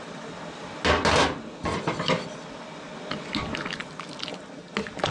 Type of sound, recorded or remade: recorded